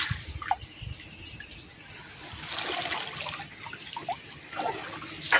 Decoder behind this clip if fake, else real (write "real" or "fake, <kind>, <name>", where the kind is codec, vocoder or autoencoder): real